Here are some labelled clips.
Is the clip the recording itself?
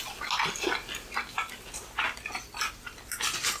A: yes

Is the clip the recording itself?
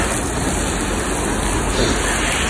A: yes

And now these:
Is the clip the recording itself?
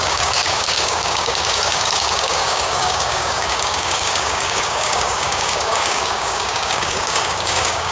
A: no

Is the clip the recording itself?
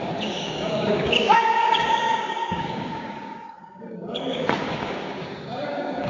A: no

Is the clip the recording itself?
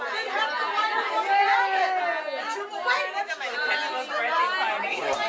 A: yes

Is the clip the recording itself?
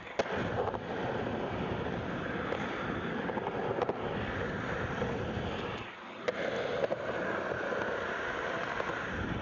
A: yes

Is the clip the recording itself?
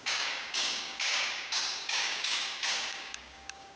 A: no